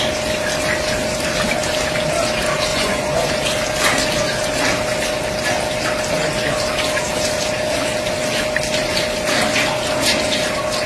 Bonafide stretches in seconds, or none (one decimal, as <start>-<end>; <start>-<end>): 0.0-2.7; 3.3-10.9